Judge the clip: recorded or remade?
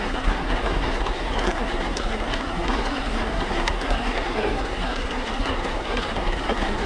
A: remade